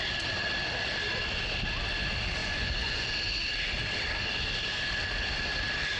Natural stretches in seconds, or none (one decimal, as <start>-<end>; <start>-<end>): 0.0-2.4; 3.1-6.0